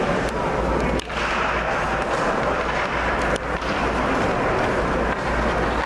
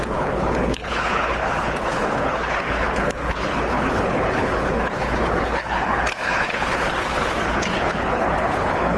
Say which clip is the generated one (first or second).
second